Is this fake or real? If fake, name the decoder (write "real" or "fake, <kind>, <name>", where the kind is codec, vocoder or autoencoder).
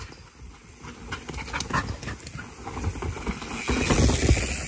real